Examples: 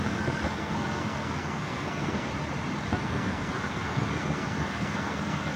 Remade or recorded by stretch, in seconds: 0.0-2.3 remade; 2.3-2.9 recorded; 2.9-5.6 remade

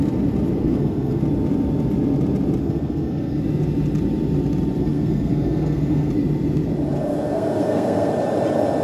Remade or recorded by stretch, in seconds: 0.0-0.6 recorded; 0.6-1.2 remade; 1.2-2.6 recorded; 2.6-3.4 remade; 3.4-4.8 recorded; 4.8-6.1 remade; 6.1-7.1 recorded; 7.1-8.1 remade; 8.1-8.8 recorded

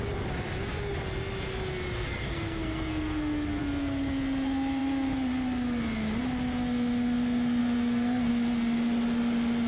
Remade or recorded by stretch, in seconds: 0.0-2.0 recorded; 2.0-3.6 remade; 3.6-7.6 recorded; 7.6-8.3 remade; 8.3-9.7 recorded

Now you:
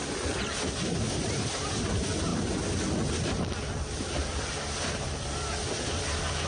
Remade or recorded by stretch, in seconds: 0.0-6.5 recorded

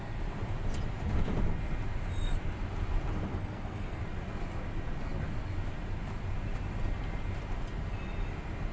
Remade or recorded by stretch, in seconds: 0.0-3.3 recorded; 3.3-4.0 remade; 4.0-8.7 recorded